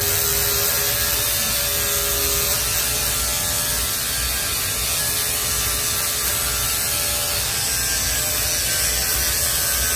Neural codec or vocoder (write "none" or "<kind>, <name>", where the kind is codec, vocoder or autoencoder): none